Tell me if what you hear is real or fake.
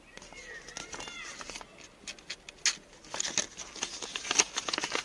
real